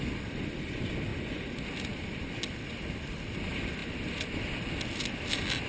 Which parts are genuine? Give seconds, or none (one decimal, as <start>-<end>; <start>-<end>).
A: 0.0-5.7